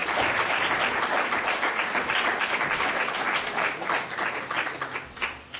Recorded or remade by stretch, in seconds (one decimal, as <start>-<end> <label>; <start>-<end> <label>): 0.0-5.6 recorded